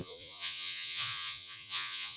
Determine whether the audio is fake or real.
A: fake